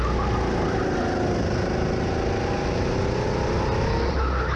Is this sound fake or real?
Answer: real